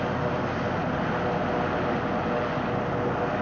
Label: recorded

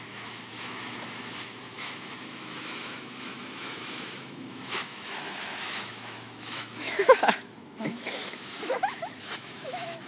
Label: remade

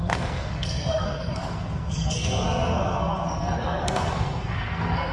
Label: remade